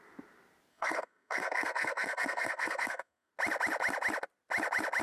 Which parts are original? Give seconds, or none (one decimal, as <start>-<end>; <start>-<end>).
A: 0.0-0.7; 3.3-5.0